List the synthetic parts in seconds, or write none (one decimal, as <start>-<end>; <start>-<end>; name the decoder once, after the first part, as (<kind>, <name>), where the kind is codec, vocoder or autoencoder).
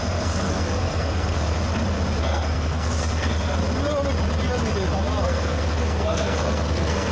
0.0-1.6 (codec, SNAC); 2.2-3.6; 5.2-7.1